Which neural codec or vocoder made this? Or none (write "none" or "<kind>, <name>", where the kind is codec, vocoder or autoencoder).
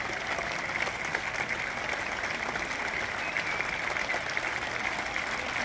none